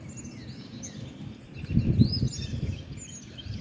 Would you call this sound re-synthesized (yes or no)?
no